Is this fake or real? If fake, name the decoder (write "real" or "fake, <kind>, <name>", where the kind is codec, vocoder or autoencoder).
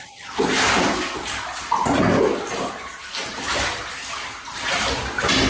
real